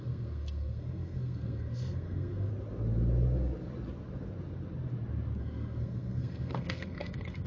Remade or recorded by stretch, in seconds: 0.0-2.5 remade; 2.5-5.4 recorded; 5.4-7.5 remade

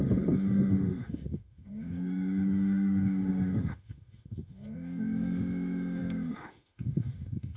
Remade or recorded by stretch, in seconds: 0.0-7.6 remade

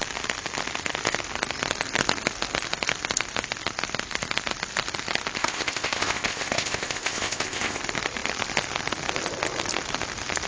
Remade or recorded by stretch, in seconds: 0.0-5.4 recorded; 5.4-7.8 remade; 7.8-10.5 recorded

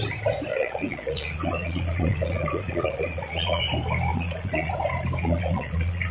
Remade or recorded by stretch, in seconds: 0.0-0.5 recorded; 0.5-3.6 remade; 3.6-4.1 recorded; 4.1-4.7 remade; 4.7-5.2 recorded; 5.2-6.1 remade

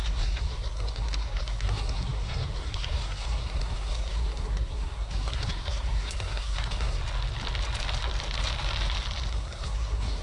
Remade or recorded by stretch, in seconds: 0.0-7.0 remade; 7.0-9.3 recorded; 9.3-10.2 remade

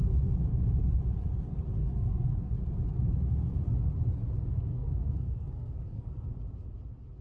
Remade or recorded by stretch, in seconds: 0.0-1.8 recorded; 1.8-2.6 remade; 2.6-4.7 recorded; 4.7-6.4 remade; 6.4-7.2 recorded

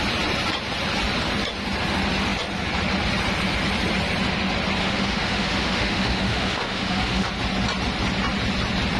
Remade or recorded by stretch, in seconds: 0.0-4.8 recorded; 4.8-7.3 remade; 7.3-9.0 recorded